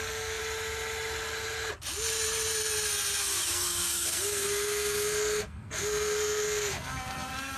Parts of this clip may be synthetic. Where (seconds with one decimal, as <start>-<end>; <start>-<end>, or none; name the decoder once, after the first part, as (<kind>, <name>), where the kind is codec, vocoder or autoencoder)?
0.0-0.4 (codec, SNAC); 3.5-7.6